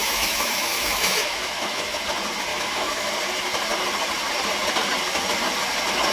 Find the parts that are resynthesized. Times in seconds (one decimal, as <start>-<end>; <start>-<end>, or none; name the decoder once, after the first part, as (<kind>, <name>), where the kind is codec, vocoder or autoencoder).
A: 0.0-2.0 (autoencoder, DAC-VAE); 2.5-3.1